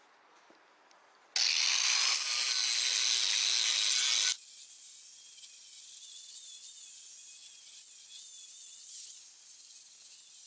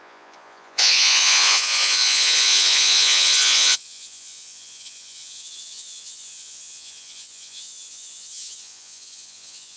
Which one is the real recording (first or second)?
first